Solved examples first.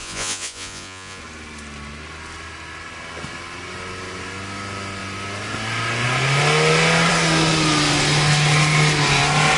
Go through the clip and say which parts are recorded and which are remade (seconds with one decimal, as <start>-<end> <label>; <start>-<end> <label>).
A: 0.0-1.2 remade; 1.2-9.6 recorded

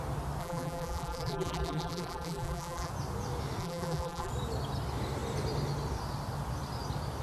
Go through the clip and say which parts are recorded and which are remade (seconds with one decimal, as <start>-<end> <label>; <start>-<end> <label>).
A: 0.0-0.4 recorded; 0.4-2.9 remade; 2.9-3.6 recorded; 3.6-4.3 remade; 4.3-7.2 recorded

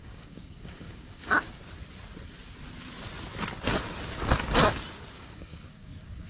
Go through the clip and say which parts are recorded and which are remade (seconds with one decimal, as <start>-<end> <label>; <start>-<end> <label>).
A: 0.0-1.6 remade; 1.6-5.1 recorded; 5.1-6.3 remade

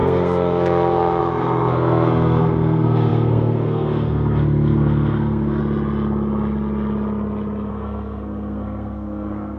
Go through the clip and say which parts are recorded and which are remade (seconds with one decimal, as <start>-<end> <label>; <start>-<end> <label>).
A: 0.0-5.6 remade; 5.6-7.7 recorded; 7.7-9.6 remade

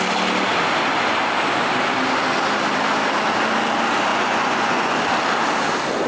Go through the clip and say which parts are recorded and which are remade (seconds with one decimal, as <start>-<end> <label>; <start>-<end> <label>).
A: 0.0-4.1 recorded; 4.1-5.0 remade; 5.0-6.1 recorded